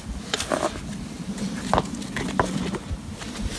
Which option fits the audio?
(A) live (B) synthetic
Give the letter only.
A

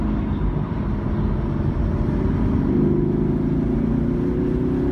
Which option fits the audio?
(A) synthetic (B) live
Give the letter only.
B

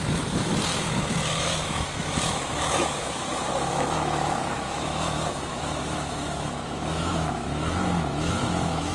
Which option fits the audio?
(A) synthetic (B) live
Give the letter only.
A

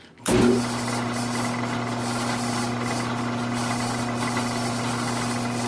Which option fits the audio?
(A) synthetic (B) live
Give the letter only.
B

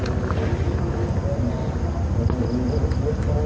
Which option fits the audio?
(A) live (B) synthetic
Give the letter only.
A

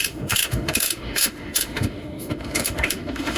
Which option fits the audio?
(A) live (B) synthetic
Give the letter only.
B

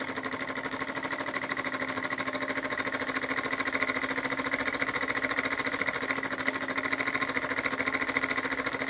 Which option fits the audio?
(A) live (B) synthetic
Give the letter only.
A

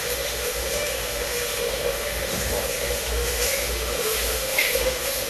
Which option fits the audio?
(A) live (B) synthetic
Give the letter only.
B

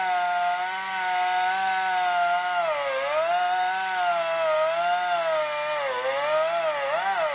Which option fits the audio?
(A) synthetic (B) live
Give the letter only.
B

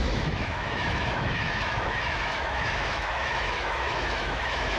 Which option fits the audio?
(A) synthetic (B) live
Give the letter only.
A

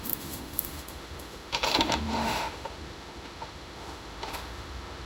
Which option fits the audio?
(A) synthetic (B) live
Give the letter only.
A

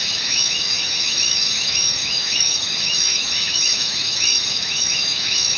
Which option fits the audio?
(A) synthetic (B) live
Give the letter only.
A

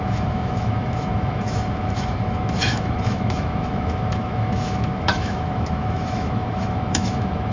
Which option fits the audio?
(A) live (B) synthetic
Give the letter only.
B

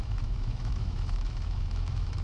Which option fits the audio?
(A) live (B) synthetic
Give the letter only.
B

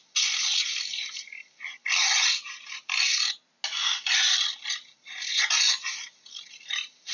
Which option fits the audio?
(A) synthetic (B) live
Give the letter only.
B